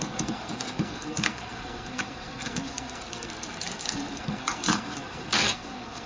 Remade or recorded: remade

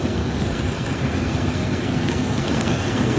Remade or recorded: remade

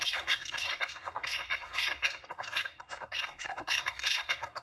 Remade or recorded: remade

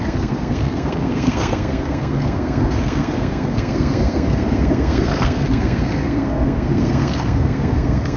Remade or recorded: remade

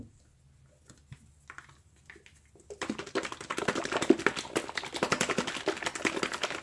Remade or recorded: recorded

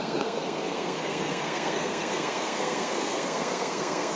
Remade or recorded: remade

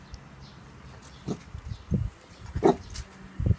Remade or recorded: recorded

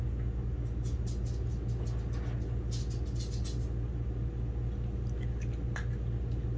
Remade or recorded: recorded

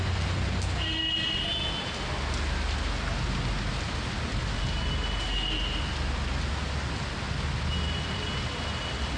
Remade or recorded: recorded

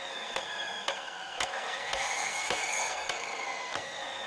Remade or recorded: remade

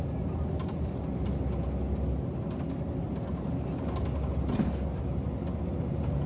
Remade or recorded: recorded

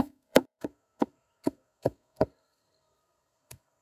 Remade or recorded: remade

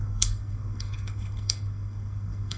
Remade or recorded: remade